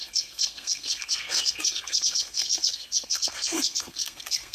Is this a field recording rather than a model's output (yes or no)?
no